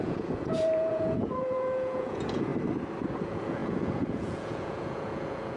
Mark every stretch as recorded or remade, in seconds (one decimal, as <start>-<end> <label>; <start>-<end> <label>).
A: 0.0-2.5 remade; 2.5-3.2 recorded; 3.2-5.6 remade